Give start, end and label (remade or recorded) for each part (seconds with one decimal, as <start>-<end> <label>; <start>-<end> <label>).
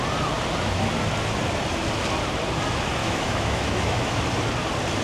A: 0.0-3.0 recorded; 3.0-4.2 remade; 4.2-5.0 recorded